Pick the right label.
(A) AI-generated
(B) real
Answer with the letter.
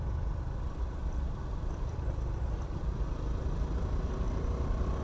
A